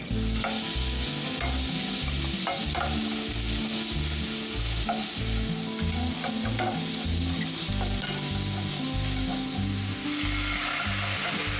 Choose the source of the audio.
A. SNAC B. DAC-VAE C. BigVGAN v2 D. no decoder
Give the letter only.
D